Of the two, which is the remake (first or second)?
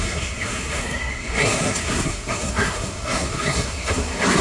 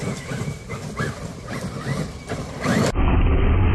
first